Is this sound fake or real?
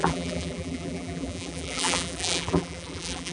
fake